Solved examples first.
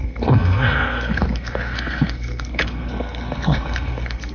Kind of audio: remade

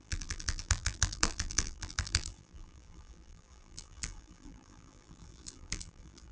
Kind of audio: remade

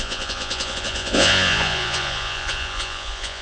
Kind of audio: remade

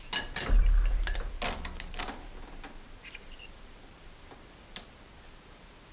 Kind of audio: recorded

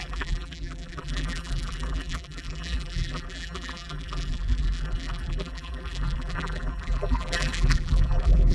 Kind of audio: remade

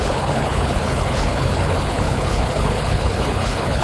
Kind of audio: remade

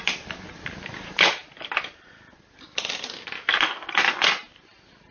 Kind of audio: recorded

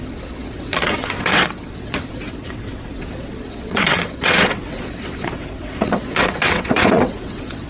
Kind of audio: remade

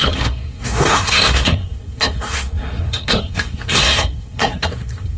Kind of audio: remade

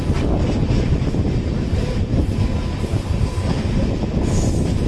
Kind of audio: recorded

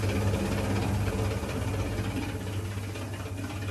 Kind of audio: recorded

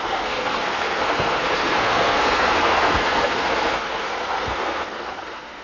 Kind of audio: remade